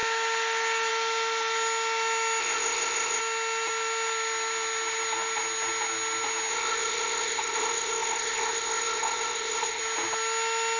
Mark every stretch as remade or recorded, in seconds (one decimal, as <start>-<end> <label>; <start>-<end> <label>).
0.0-2.4 recorded; 2.4-3.2 remade; 3.2-6.5 recorded; 6.5-9.8 remade; 9.8-10.8 recorded